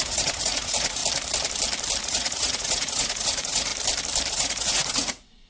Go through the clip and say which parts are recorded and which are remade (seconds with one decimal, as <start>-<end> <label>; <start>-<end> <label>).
0.0-1.0 remade; 1.0-2.0 recorded; 2.0-3.7 remade; 3.7-4.3 recorded; 4.3-5.5 remade